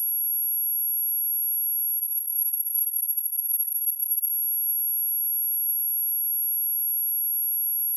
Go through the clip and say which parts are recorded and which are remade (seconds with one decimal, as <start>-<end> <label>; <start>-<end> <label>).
0.0-2.0 recorded; 2.0-4.3 remade; 4.3-8.0 recorded